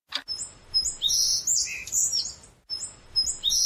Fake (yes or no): no